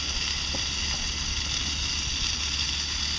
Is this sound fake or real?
real